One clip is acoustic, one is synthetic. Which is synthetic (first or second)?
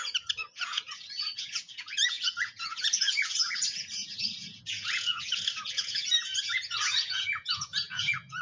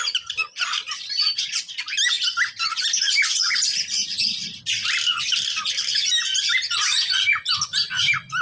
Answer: first